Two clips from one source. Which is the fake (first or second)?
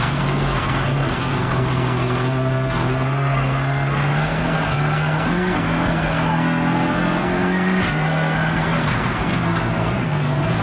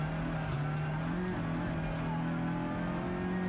first